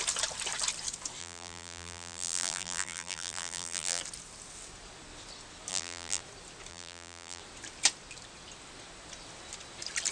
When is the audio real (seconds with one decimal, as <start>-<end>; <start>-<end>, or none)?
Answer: 0.0-1.2; 4.0-5.7; 6.2-6.7; 7.4-10.1